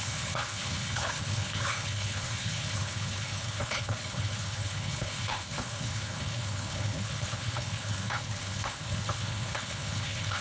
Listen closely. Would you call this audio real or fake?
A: fake